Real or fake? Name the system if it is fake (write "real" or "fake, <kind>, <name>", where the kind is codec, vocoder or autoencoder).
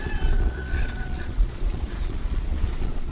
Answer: fake, vocoder, Vocos